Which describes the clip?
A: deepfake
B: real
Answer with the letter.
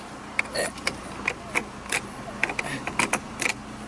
B